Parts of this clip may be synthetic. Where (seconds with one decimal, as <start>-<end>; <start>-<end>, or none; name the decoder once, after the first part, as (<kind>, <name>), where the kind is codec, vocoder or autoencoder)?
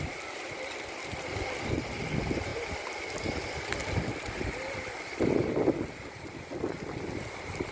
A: none